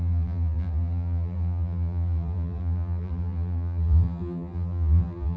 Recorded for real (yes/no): no